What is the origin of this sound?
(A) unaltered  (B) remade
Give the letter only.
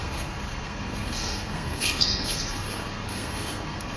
B